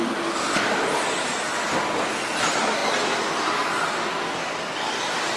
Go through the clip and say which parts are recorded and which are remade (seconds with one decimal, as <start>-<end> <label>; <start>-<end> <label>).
0.0-5.4 recorded